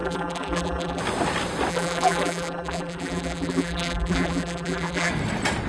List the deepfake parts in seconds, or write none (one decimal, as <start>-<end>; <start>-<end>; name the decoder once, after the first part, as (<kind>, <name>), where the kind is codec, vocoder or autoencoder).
0.0-1.0 (vocoder, BigVGAN v2); 1.7-5.1